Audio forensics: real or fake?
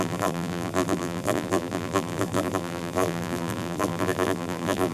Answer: fake